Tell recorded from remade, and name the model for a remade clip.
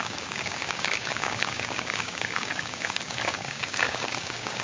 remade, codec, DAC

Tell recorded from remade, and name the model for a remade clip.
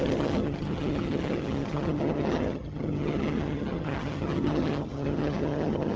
remade, vocoder, HiFi-GAN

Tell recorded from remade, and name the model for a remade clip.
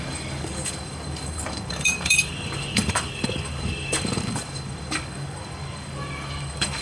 remade, codec, DAC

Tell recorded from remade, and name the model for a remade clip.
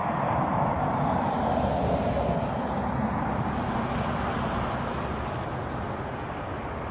recorded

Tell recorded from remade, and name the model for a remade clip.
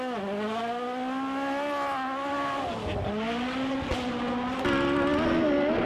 recorded